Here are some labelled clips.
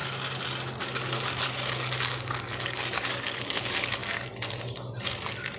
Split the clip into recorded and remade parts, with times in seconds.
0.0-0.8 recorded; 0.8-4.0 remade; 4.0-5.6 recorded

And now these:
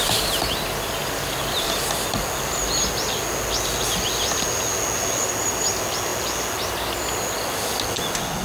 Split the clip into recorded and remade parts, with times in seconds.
0.0-8.4 recorded